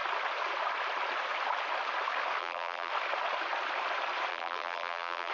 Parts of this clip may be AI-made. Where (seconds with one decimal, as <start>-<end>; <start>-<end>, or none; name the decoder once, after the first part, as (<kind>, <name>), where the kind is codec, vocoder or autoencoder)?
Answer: 2.4-2.9 (vocoder, BigVGAN v2); 4.3-5.3